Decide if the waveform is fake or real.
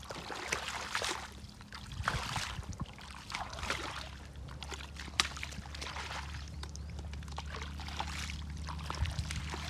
real